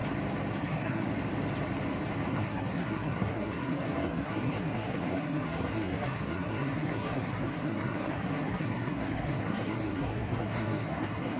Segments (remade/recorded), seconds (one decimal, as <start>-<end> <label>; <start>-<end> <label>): 0.0-0.6 recorded; 0.6-1.1 remade; 1.1-2.3 recorded; 2.3-11.4 remade